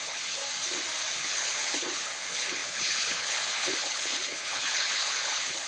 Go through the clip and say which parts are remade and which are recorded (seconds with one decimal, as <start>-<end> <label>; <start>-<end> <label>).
0.0-0.4 remade; 0.4-1.1 recorded; 1.1-5.7 remade